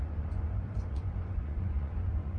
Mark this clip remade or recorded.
remade